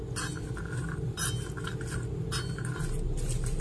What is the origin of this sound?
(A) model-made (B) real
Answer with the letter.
B